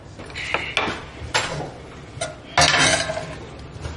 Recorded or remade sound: recorded